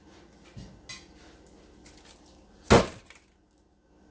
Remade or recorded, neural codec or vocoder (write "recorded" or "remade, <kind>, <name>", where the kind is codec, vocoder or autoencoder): recorded